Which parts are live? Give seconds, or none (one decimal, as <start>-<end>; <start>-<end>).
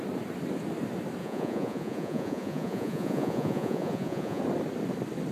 0.0-1.2; 4.4-5.3